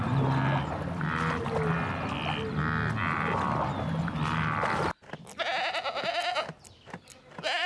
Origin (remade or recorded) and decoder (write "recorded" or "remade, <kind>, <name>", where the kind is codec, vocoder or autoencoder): recorded